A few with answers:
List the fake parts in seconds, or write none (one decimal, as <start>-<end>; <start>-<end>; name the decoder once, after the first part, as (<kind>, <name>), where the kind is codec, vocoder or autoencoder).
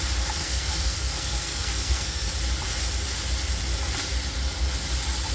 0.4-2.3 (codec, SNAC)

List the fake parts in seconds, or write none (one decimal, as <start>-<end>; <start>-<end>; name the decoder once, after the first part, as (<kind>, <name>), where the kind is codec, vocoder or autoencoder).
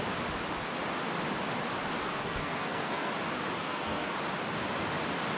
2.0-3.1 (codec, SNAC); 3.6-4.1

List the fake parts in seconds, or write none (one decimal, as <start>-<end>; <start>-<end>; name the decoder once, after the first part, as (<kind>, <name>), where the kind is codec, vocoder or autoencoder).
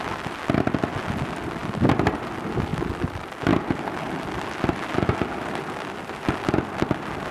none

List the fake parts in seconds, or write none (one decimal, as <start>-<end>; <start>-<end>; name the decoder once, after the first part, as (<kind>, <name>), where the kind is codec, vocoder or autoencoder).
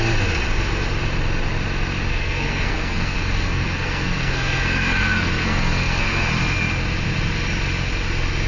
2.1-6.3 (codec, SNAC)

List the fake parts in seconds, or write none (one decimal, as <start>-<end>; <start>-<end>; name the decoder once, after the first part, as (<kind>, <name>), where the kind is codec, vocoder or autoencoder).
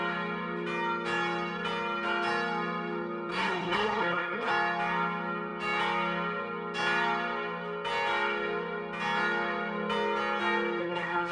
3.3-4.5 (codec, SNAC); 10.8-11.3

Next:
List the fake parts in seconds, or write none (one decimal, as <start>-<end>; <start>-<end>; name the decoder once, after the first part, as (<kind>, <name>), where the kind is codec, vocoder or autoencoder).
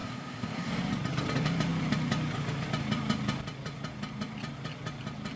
0.0-0.7 (codec, SNAC)